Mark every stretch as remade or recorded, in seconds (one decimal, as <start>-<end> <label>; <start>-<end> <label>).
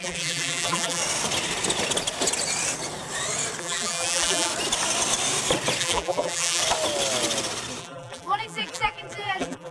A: 0.0-1.0 remade; 1.0-3.6 recorded; 3.6-4.5 remade; 4.5-5.8 recorded; 5.8-6.6 remade; 6.6-7.8 recorded; 7.8-9.7 remade